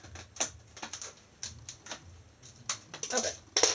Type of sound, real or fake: real